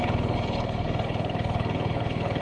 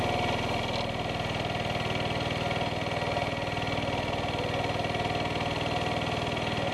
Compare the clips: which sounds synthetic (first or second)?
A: first